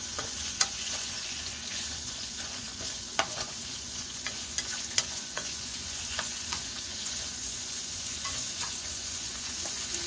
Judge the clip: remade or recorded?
remade